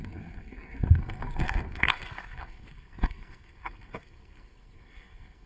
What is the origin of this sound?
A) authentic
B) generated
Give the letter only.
B